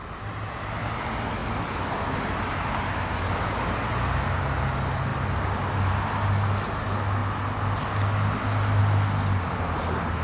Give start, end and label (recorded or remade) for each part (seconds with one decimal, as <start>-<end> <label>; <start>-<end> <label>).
0.0-10.2 recorded